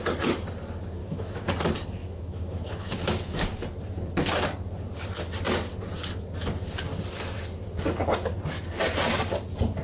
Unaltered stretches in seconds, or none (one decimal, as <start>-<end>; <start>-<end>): 0.0-1.0; 1.5-2.0; 3.0-9.8